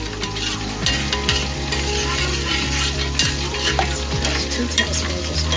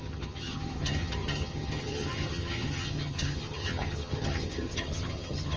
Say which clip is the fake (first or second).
second